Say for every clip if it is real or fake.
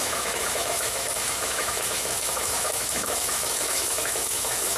fake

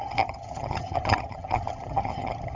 fake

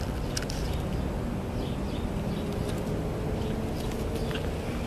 real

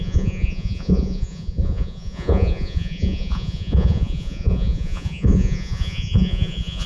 fake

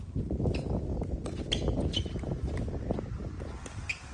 real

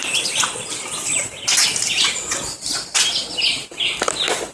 real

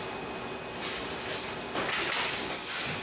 real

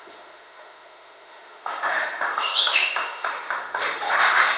fake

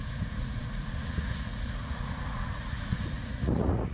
fake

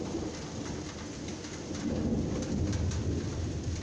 real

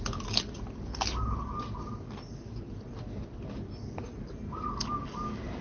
real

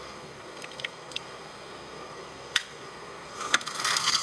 fake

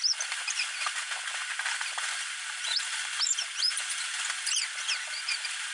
real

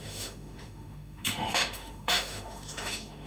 fake